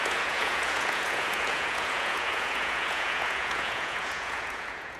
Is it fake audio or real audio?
fake